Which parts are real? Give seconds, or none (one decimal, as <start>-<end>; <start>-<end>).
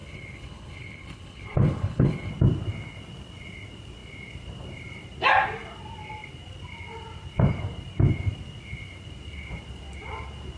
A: 2.3-10.6